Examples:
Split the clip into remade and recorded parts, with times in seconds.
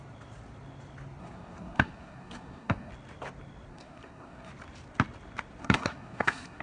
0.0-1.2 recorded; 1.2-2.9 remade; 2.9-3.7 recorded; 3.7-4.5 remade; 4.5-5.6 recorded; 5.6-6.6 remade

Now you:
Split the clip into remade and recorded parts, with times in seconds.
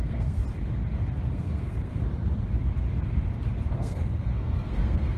0.0-0.4 remade; 0.4-1.3 recorded; 1.3-1.9 remade; 1.9-3.7 recorded; 3.7-5.2 remade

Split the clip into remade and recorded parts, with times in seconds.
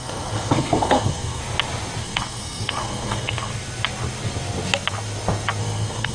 0.0-1.4 remade; 1.4-2.0 recorded; 2.0-3.5 remade; 3.5-5.6 recorded; 5.6-6.1 remade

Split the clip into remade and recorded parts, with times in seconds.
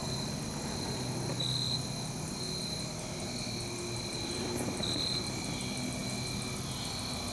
0.0-7.3 recorded